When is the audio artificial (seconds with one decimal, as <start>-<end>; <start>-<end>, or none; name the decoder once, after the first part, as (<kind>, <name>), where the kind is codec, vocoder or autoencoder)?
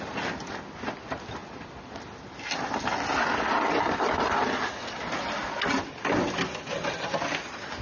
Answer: none